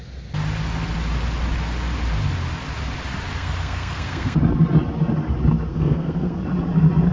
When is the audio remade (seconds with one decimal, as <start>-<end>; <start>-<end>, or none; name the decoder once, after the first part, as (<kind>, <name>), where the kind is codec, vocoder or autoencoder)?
3.4-4.4 (codec, SNAC); 5.7-6.4